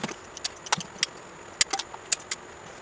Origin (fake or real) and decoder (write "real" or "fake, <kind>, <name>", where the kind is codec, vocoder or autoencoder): real